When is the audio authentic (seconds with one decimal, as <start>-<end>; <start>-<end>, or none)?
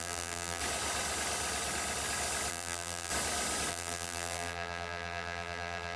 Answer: 0.6-2.5; 3.1-3.7